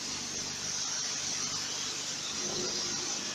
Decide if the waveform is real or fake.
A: real